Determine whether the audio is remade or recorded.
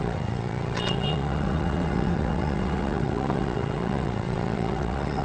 remade